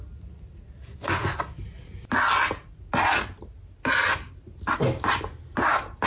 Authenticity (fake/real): real